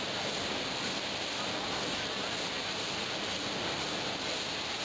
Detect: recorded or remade recorded